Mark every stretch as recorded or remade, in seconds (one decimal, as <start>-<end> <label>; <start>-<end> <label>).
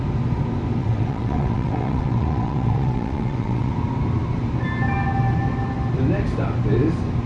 0.0-0.8 recorded; 0.8-3.7 remade; 3.7-7.3 recorded